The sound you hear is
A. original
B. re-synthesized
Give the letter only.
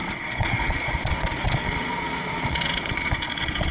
B